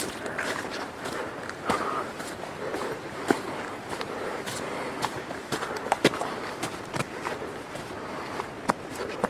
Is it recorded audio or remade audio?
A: remade